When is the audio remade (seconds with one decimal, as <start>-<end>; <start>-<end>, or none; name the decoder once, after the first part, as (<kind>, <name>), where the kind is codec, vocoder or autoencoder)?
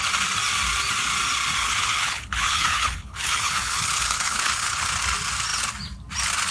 1.6-4.9 (codec, HILCodec)